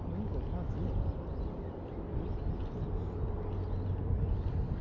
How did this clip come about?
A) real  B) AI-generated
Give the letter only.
A